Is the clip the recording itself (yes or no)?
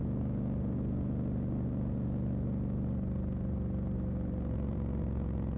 yes